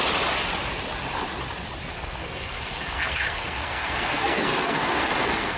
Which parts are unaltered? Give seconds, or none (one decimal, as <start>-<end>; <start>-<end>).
0.0-1.9